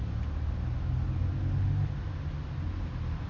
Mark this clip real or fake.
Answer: real